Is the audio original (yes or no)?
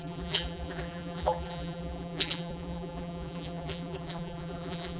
no